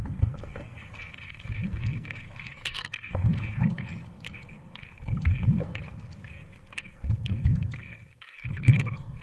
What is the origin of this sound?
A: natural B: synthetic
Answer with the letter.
B